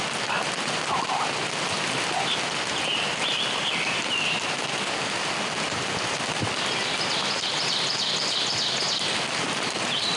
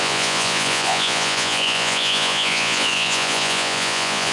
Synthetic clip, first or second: second